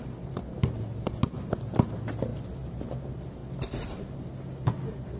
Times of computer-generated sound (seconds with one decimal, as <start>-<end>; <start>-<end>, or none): none